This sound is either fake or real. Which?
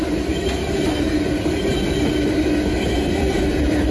real